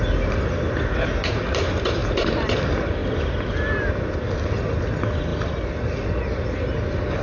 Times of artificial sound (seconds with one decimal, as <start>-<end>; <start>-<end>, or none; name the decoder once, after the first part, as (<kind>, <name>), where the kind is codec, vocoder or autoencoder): none